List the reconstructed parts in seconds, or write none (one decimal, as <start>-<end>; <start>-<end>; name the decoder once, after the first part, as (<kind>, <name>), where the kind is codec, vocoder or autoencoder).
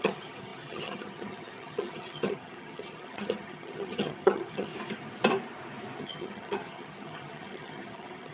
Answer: 0.0-4.7 (vocoder, HiFi-GAN); 6.0-8.3